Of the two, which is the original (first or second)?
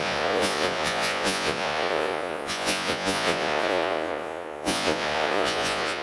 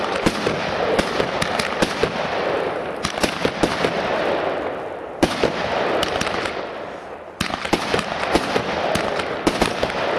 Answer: second